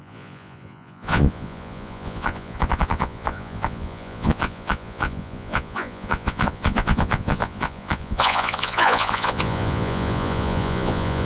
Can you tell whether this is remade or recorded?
remade